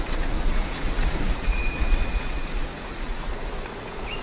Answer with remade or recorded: remade